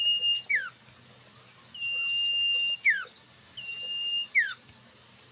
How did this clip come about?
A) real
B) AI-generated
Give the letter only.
A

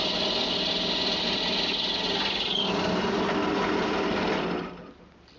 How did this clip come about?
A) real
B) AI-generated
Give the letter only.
A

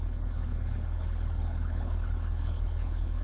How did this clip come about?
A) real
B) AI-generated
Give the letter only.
B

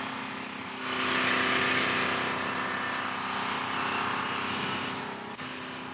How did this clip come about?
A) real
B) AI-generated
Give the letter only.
A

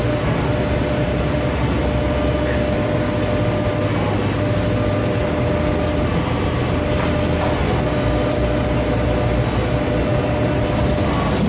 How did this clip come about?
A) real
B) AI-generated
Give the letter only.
A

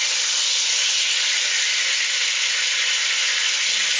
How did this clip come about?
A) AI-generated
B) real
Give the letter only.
B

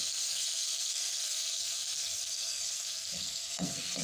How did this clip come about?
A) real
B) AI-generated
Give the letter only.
B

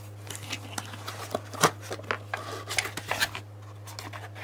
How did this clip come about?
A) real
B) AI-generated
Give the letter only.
A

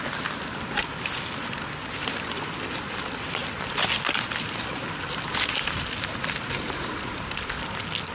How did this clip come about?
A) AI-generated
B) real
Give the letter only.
B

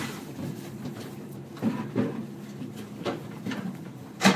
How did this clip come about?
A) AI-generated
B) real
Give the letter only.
A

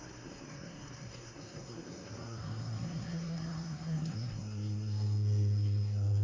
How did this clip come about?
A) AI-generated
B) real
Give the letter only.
A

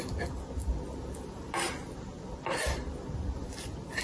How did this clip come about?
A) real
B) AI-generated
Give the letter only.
A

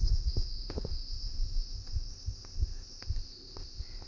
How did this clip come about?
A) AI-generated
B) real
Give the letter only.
A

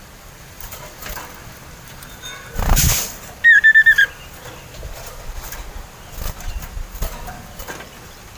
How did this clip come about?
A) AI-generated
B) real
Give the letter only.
B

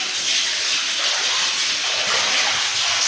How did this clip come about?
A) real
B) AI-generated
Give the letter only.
A